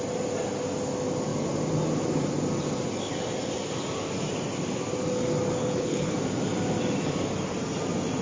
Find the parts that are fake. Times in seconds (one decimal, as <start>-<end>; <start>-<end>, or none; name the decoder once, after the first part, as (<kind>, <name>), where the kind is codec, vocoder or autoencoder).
5.6-6.1 (codec, HILCodec)

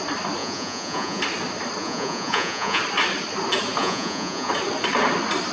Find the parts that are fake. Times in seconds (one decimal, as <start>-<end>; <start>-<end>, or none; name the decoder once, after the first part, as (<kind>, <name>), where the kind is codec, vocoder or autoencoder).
0.4-1.2 (vocoder, Vocos); 1.8-2.8; 3.8-4.5